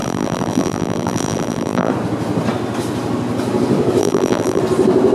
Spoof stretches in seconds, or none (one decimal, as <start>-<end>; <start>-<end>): 0.0-1.9; 4.0-4.6

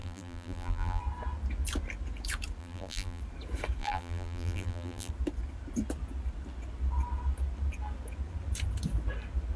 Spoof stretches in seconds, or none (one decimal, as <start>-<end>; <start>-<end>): 0.0-1.0; 2.6-3.2; 3.8-5.1

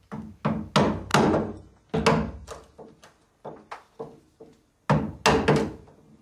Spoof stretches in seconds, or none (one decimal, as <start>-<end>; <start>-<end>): none